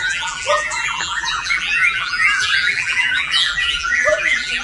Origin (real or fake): fake